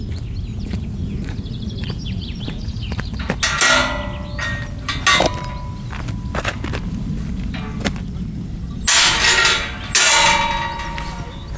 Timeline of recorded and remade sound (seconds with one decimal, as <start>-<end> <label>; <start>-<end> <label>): 0.0-0.5 recorded; 0.5-3.3 remade; 3.3-11.6 recorded